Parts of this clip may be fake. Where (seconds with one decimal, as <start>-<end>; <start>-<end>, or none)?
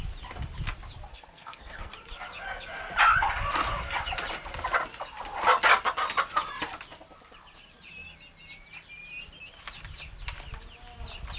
1.1-1.9